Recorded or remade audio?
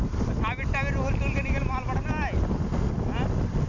recorded